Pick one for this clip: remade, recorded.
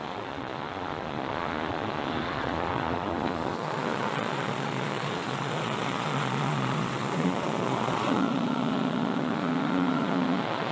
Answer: remade